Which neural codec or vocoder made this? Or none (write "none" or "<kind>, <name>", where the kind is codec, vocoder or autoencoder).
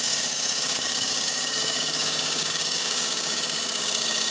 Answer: codec, DAC